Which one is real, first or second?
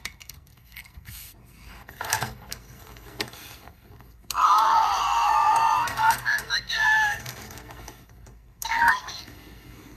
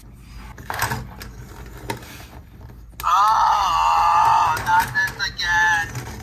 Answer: second